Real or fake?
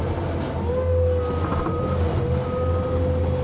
real